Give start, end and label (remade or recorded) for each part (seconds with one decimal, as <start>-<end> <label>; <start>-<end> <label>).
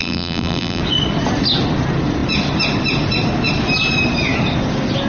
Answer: 0.0-0.8 remade; 0.8-5.1 recorded